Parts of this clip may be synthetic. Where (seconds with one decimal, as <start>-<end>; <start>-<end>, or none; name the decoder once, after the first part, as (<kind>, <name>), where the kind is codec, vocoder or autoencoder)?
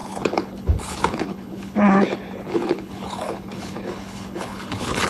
0.0-5.1 (codec, HILCodec)